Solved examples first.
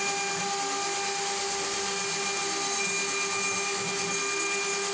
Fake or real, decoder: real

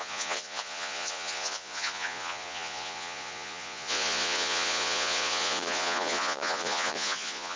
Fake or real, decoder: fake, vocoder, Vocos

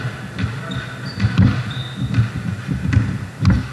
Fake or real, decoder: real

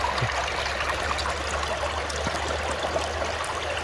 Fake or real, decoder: real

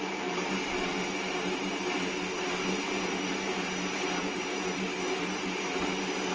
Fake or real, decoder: real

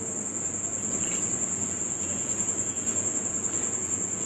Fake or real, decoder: fake, vocoder, Vocos